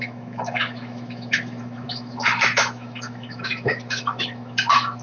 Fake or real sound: fake